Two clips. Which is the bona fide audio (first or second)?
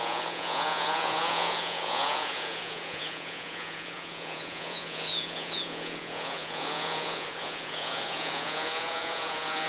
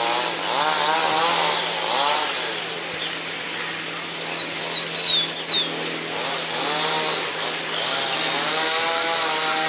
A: second